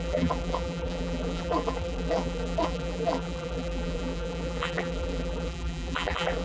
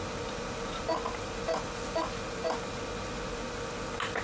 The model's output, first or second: first